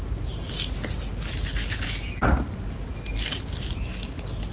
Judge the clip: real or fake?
real